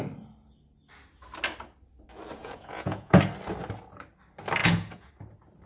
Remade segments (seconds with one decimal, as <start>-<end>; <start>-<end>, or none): 2.4-3.2; 4.6-5.1